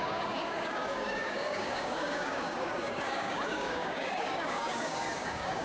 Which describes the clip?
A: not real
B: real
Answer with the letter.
A